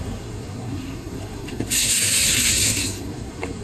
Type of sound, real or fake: fake